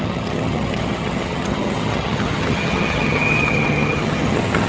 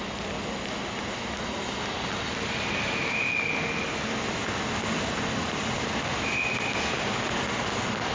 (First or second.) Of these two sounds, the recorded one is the second